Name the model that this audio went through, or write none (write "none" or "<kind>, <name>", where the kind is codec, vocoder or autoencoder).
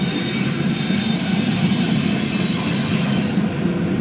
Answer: none